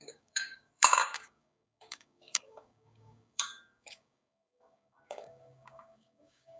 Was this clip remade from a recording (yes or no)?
yes